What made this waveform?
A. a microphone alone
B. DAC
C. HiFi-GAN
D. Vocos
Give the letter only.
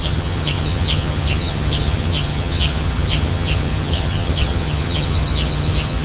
C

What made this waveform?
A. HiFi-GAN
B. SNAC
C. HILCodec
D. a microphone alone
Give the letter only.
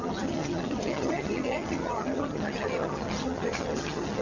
A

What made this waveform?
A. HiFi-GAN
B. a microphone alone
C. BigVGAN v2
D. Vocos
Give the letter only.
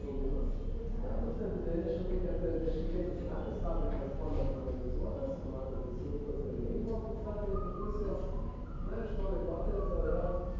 B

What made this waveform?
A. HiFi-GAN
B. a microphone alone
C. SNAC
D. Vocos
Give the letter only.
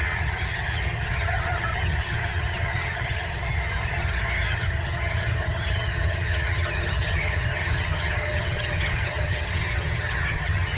A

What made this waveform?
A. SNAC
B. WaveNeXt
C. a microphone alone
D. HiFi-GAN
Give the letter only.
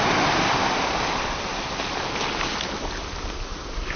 C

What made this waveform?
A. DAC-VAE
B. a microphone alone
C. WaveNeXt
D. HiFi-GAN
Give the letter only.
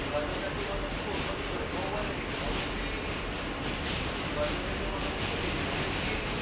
B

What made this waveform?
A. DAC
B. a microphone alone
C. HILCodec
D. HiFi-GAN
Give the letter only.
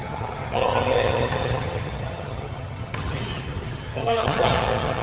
D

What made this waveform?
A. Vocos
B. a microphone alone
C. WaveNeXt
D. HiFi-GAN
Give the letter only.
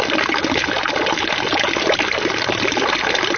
B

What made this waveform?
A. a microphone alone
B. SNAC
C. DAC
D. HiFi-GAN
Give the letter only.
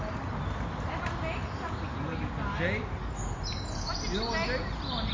A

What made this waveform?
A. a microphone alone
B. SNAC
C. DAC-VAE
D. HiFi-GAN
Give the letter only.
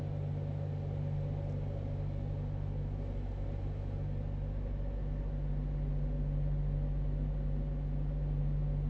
A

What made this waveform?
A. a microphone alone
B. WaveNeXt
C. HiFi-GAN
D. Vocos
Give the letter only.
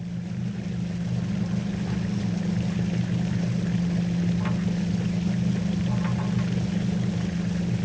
A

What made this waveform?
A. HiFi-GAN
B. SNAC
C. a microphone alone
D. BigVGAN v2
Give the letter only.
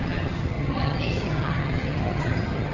A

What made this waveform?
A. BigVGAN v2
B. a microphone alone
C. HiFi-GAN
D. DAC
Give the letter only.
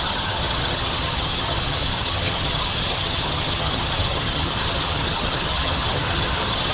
C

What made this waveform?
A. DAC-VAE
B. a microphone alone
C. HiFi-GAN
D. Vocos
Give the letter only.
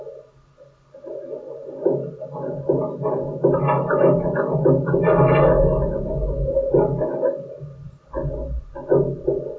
B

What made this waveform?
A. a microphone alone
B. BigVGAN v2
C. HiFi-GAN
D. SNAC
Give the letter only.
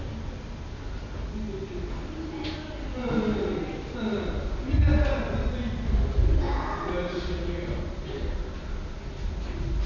A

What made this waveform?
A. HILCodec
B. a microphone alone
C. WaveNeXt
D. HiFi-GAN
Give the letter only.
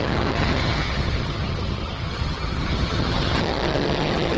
D